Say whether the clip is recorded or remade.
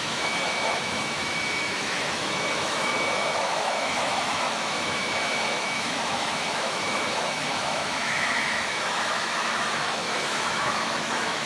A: remade